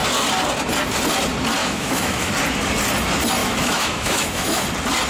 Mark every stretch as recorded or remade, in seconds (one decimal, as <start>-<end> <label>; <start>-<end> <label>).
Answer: 0.0-1.6 recorded; 1.6-2.3 remade; 2.3-3.4 recorded; 3.4-4.6 remade; 4.6-5.1 recorded